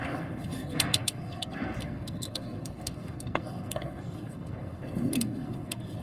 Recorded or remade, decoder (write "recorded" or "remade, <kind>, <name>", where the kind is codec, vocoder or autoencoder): remade, codec, SNAC